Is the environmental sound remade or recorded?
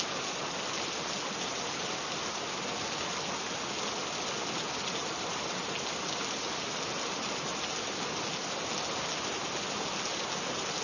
recorded